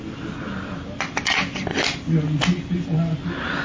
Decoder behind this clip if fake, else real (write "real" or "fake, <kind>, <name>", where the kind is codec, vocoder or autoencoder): real